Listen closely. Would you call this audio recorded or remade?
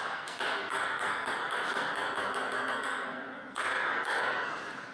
remade